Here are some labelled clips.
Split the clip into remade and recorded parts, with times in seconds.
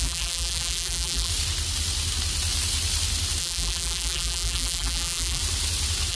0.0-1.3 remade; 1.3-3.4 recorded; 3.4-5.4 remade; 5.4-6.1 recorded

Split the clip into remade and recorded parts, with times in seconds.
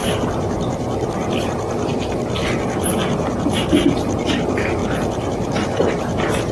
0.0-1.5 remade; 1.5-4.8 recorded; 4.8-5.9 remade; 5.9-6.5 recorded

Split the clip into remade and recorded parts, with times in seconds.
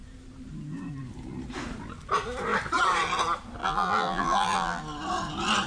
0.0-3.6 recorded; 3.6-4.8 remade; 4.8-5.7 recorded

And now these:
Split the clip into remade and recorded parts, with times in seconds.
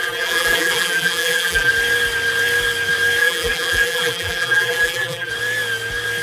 0.0-1.7 remade; 1.7-3.2 recorded; 3.2-5.3 remade; 5.3-6.2 recorded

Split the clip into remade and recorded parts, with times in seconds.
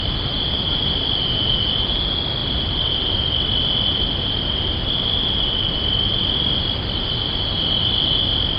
0.0-8.6 recorded